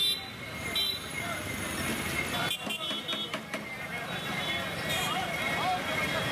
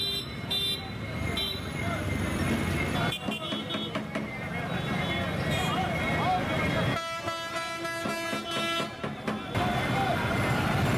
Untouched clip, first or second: second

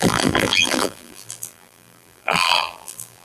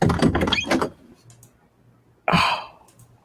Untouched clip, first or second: second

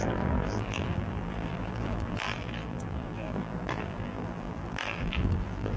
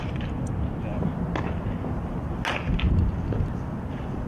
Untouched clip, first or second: second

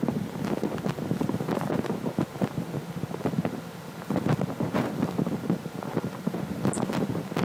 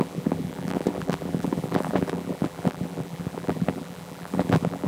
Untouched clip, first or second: first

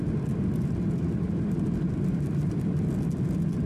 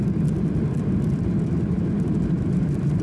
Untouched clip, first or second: first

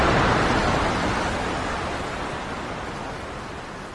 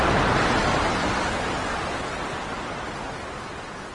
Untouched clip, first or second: second